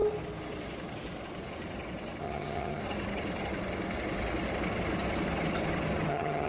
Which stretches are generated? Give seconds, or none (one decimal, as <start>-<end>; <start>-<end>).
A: 2.2-2.8; 6.1-6.5